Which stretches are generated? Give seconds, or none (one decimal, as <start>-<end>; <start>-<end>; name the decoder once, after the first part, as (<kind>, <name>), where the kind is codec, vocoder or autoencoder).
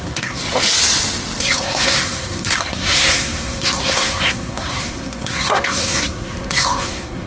0.0-0.4 (codec, SNAC); 1.4-7.3